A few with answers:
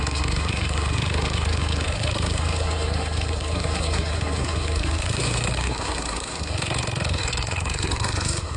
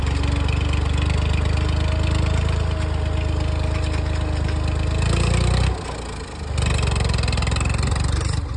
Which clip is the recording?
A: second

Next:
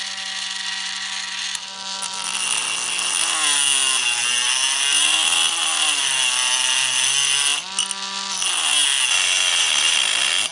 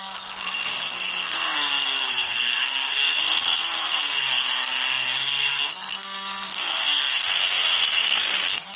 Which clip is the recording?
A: first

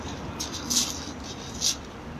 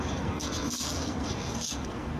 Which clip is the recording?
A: first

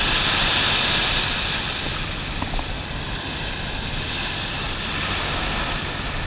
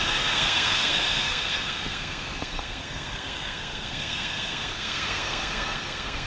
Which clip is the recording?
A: first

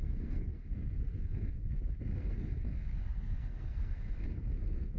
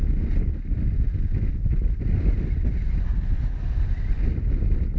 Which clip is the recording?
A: second